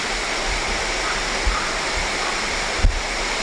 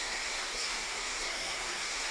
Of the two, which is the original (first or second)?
first